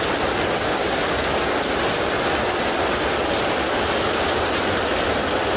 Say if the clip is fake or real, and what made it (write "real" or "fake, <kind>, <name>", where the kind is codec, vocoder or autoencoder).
real